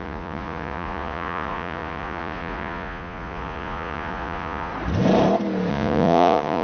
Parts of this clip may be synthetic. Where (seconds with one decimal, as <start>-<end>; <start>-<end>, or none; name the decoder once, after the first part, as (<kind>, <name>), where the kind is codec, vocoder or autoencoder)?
0.0-4.7 (vocoder, Vocos); 5.7-6.6